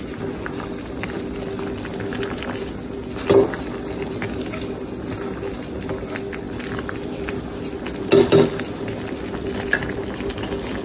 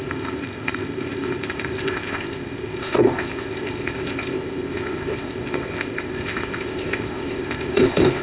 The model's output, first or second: second